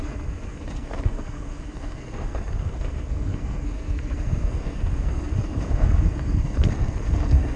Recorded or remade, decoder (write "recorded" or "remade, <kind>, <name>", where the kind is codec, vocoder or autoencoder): remade, codec, SNAC